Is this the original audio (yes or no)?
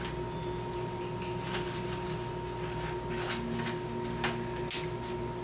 yes